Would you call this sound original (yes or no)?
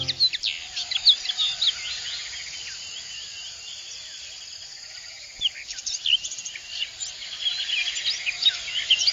yes